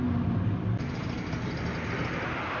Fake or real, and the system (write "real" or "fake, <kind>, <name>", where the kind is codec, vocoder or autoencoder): real